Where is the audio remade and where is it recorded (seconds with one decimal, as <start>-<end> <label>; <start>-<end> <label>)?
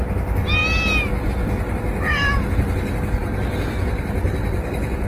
0.0-5.1 recorded